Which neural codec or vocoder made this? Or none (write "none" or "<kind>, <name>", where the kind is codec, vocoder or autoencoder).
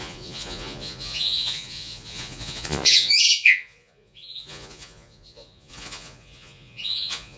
vocoder, Vocos